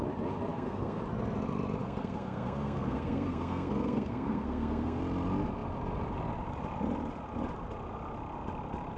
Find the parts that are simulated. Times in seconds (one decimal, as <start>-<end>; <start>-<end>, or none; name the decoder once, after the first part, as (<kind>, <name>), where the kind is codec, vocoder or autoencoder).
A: 0.5-1.0 (codec, SNAC); 1.8-5.0